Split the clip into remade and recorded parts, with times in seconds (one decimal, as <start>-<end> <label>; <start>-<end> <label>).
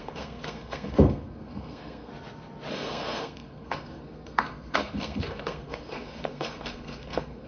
0.0-2.1 remade; 2.1-2.7 recorded; 2.7-7.5 remade